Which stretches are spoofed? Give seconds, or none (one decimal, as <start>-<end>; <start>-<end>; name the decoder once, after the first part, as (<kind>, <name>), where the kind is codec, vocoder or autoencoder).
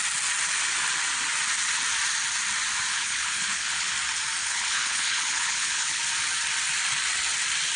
2.9-3.9 (codec, HILCodec); 4.4-6.0